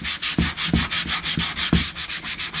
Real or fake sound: real